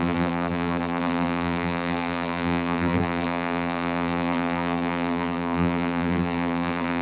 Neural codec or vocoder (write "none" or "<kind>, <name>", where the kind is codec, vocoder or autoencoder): vocoder, BigVGAN v2